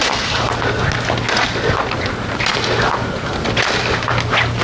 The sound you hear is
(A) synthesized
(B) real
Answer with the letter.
B